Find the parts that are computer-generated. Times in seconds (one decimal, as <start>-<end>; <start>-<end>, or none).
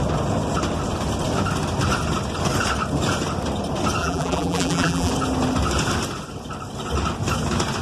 4.0-5.1